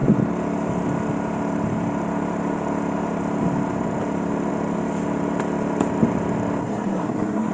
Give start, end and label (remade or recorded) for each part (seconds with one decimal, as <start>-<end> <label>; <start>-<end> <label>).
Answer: 0.0-6.6 recorded; 6.6-7.5 remade